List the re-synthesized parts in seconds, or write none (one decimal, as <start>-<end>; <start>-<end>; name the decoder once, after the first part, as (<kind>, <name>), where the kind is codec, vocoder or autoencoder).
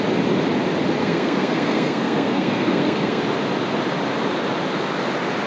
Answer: 1.0-3.2 (codec, SNAC)